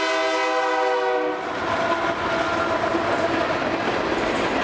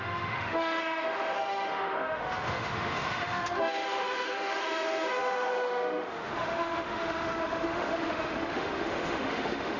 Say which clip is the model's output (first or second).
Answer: second